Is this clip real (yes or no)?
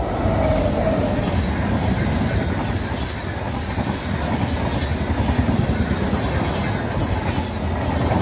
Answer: yes